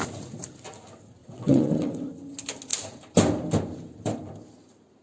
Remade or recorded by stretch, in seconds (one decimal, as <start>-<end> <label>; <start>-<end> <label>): 0.0-1.2 recorded; 1.2-2.1 remade; 2.1-5.0 recorded